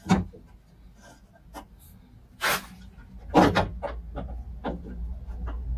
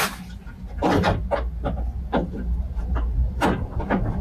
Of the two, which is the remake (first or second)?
second